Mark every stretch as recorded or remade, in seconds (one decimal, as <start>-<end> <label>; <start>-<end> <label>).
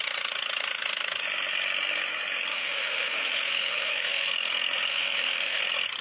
0.0-2.5 recorded; 2.5-4.3 remade; 4.3-4.9 recorded; 4.9-5.6 remade; 5.6-6.0 recorded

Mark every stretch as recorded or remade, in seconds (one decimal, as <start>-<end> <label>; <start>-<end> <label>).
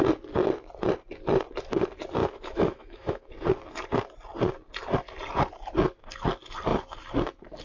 0.0-2.2 recorded; 2.2-3.3 remade; 3.3-7.6 recorded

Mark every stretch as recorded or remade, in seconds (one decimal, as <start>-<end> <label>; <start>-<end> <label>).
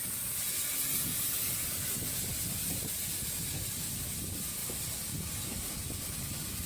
0.0-6.7 recorded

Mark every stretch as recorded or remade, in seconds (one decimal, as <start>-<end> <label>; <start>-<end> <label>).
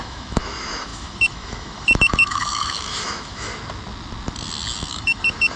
0.0-3.5 remade; 3.5-4.9 recorded; 4.9-5.6 remade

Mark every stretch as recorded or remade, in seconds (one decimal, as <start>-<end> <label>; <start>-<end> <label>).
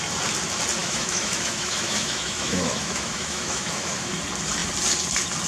0.0-0.8 recorded; 0.8-4.1 remade; 4.1-5.5 recorded